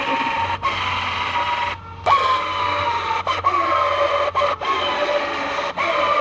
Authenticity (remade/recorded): recorded